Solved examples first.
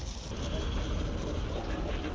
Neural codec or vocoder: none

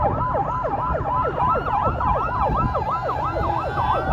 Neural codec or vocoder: none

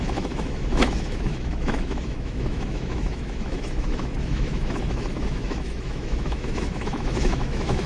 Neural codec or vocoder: autoencoder, DAC-VAE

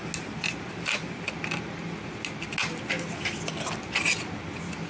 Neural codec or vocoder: none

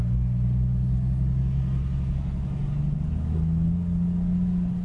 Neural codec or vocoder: none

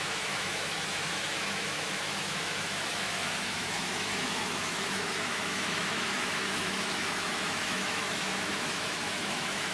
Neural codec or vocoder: autoencoder, DAC-VAE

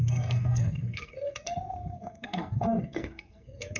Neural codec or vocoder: codec, SNAC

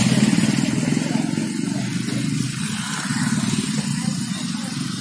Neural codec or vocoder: none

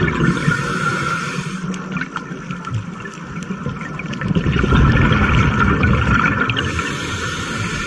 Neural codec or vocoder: none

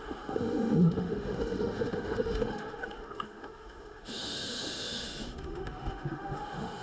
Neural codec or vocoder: autoencoder, DAC-VAE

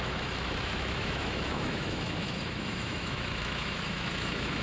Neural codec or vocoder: autoencoder, DAC-VAE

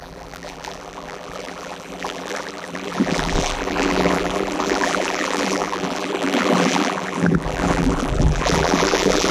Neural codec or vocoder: vocoder, BigVGAN v2